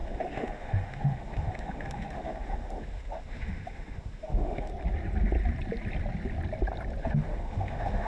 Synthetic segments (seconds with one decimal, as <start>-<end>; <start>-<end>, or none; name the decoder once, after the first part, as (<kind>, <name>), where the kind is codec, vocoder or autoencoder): 0.0-4.7 (autoencoder, DAC-VAE); 7.0-8.1